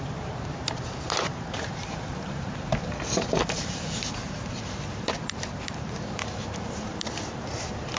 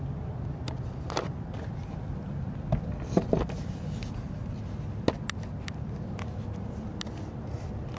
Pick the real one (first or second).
second